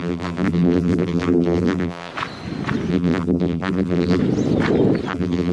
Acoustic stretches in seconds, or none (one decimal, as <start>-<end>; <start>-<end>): 2.1-2.9; 4.2-5.1